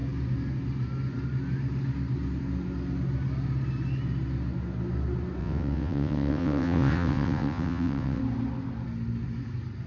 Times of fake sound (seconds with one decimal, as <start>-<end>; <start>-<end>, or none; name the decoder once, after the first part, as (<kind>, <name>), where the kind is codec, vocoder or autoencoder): 5.4-8.2 (vocoder, WaveNeXt)